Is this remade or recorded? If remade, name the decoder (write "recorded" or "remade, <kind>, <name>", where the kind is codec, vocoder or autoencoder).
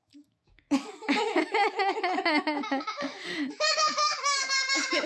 remade, autoencoder, DAC-VAE